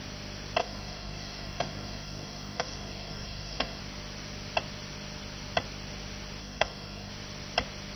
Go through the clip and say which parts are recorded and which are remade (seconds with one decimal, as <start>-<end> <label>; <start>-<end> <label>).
0.0-0.6 recorded; 0.6-3.8 remade; 3.8-6.4 recorded; 6.4-7.1 remade; 7.1-8.0 recorded